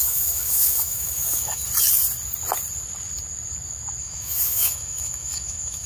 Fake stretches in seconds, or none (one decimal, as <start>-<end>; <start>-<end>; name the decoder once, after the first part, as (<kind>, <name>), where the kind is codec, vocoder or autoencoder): 0.0-1.6 (autoencoder, DAC-VAE); 4.0-5.9